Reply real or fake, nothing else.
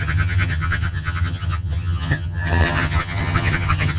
fake